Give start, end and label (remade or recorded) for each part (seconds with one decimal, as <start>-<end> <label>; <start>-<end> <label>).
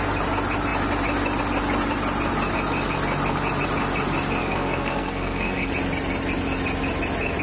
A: 0.0-4.4 recorded; 4.4-5.7 remade; 5.7-7.4 recorded